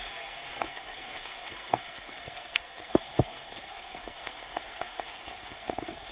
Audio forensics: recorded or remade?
remade